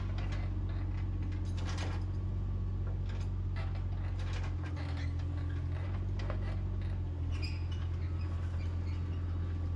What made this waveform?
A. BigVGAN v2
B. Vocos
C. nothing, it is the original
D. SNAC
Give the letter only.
C